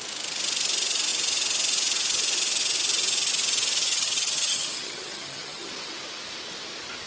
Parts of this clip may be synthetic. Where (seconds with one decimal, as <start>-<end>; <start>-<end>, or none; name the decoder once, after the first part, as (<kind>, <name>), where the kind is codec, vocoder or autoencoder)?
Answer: 3.8-5.7 (vocoder, HiFi-GAN)